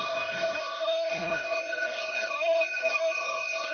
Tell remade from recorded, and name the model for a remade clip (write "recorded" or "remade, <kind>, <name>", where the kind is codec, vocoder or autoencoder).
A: remade, codec, SNAC